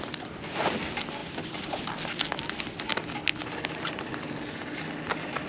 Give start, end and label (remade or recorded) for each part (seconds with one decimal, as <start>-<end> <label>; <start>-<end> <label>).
0.0-5.5 recorded